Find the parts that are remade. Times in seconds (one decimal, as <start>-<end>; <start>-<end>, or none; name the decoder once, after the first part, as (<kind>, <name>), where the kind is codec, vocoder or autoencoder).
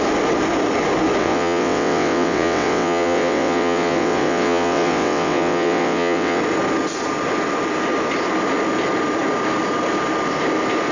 1.2-6.4 (vocoder, WaveNeXt)